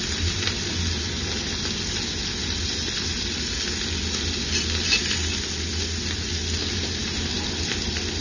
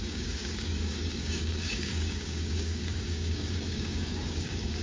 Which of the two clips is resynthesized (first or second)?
second